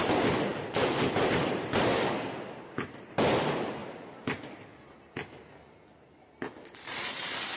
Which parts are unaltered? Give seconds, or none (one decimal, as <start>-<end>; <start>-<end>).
1.9-3.4; 3.8-6.5